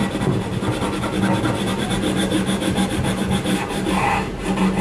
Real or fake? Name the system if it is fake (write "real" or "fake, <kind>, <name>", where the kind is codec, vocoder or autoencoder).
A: real